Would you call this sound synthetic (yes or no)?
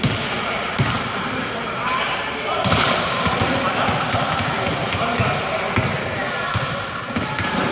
no